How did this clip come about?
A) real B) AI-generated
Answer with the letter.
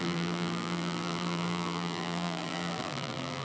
B